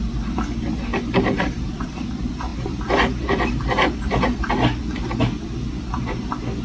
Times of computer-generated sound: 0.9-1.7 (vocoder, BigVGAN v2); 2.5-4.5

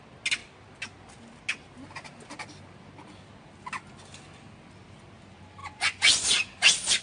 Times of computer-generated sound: 5.6-6.2 (vocoder, Vocos)